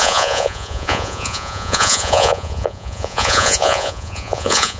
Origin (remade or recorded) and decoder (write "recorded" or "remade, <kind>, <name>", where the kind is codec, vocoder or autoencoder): remade, vocoder, Vocos